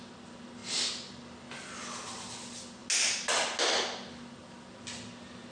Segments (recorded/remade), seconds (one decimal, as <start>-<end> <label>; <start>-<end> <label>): 0.0-5.5 recorded